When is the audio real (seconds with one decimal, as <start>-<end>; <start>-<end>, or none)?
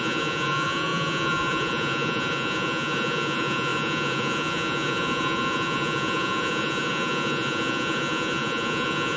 none